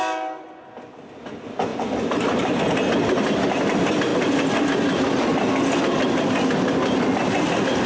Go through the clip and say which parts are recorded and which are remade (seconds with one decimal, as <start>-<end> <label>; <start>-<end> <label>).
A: 0.0-1.7 recorded; 1.7-2.6 remade; 2.6-7.9 recorded